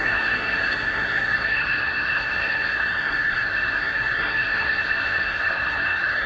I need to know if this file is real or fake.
fake